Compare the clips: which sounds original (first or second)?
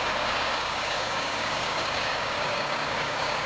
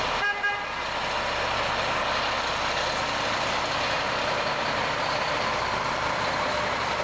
second